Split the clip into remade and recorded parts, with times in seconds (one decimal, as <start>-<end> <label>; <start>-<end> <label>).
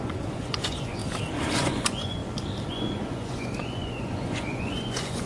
0.0-1.0 remade; 1.0-1.5 recorded; 1.5-2.2 remade; 2.2-2.7 recorded; 2.7-5.3 remade